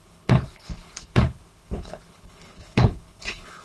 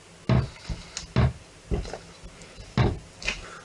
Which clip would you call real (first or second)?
second